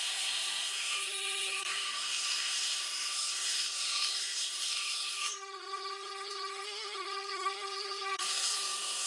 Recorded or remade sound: remade